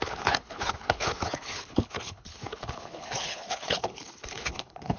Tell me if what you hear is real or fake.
fake